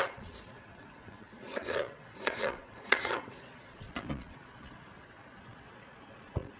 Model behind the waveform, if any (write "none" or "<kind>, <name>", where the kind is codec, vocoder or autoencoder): vocoder, Vocos